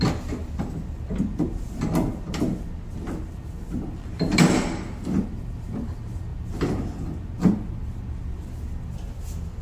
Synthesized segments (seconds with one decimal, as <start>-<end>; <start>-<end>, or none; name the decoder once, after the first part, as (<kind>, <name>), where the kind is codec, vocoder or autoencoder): none